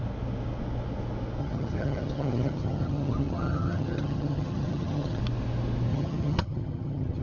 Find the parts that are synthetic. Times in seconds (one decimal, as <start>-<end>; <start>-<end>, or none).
1.4-5.2; 5.9-7.2